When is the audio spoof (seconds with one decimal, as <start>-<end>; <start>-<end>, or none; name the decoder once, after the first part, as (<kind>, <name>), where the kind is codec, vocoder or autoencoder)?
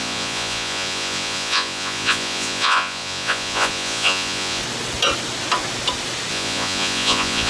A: 0.0-4.6 (vocoder, Vocos); 6.3-7.5